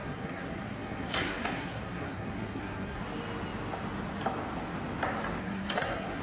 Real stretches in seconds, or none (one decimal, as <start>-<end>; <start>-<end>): 3.0-5.4